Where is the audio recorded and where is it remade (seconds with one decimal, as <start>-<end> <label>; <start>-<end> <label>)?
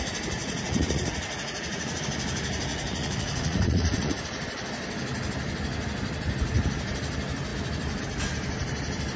0.0-0.4 recorded; 0.4-2.0 remade; 2.0-2.7 recorded; 2.7-4.2 remade; 4.2-9.2 recorded